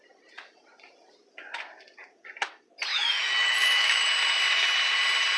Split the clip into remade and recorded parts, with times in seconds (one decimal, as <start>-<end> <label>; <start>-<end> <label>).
0.0-2.9 recorded; 2.9-4.1 remade; 4.1-5.4 recorded